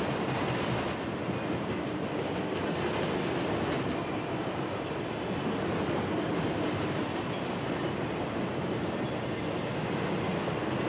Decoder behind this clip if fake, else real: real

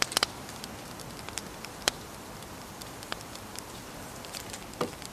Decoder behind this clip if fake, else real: fake, vocoder, BigVGAN v2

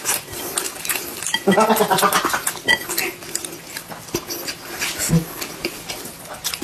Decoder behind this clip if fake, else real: real